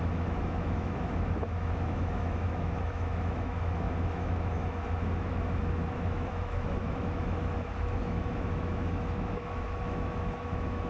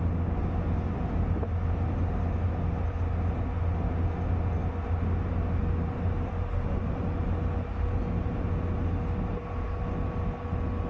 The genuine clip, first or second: second